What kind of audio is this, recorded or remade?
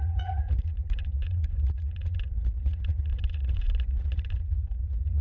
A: remade